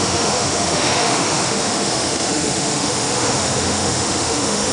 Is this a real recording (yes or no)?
no